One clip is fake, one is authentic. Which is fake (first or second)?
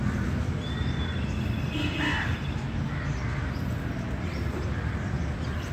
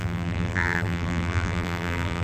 second